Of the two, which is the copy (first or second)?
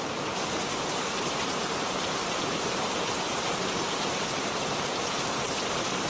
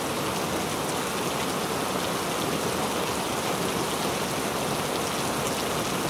first